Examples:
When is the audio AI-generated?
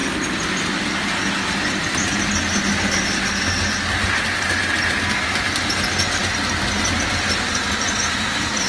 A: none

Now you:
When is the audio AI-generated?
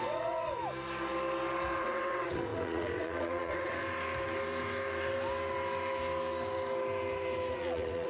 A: 0.0-0.6 (vocoder, WaveNeXt); 1.8-3.8; 7.5-8.1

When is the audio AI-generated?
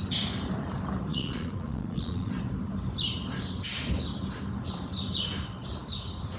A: 1.1-2.3 (vocoder, Vocos)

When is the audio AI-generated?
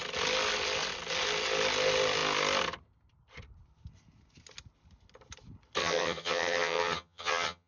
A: 5.8-7.7 (vocoder, HiFi-GAN)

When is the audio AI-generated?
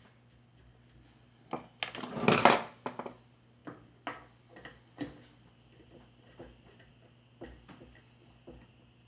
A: none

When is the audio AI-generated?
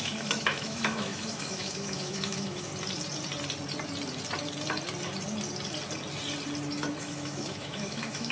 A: 0.0-2.7 (autoencoder, DAC-VAE); 7.0-8.3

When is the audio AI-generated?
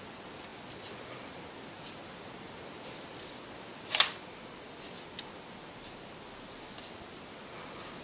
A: none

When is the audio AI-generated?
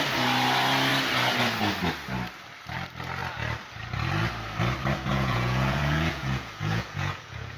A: 5.1-7.6 (vocoder, Vocos)